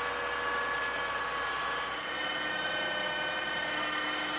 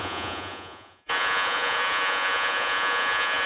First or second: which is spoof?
second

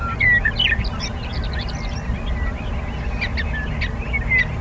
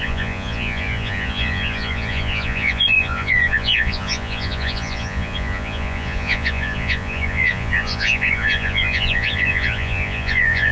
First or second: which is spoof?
second